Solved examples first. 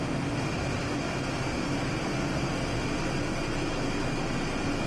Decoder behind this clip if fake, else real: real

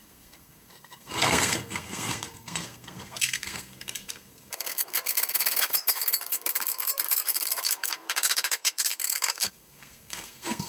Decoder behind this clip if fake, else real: fake, codec, SNAC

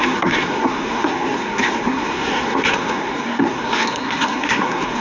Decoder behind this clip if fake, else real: fake, codec, SNAC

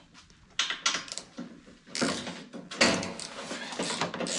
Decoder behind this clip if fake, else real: real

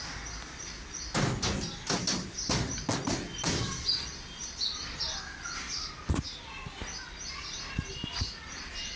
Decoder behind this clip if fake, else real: real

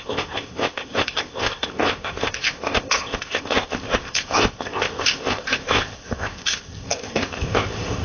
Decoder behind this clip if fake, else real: fake, codec, ZipCodec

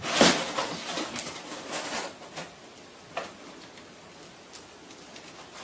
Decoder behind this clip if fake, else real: real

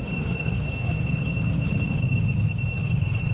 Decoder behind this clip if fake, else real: fake, codec, DAC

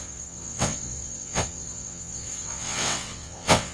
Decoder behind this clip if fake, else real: fake, vocoder, WaveNeXt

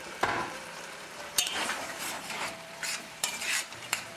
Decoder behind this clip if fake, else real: fake, vocoder, BigVGAN v2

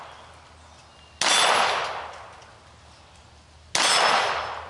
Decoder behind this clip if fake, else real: real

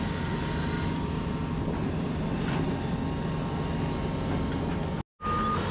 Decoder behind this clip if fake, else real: real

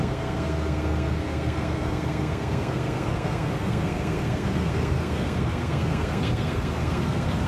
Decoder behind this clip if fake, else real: fake, codec, SNAC